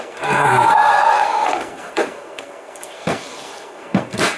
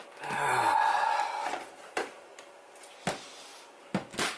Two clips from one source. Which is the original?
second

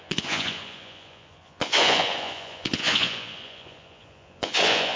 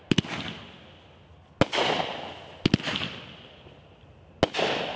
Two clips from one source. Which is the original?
second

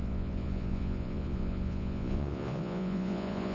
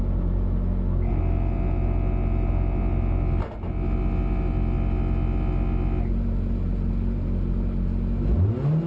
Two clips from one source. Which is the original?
second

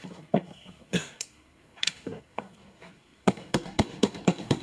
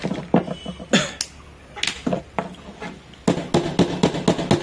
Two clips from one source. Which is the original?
second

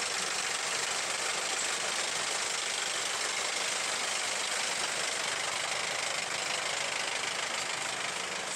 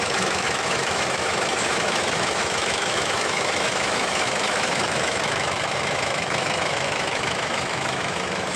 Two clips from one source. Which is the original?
first